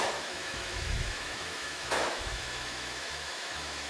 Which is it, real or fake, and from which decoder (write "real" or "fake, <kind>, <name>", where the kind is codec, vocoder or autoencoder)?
fake, autoencoder, DAC-VAE